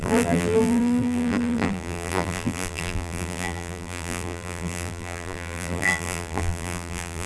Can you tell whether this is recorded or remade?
remade